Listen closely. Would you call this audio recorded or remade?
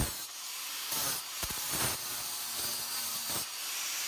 remade